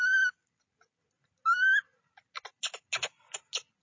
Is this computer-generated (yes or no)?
no